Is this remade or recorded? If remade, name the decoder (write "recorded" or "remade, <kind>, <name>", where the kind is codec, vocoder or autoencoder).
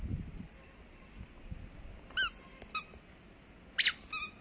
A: recorded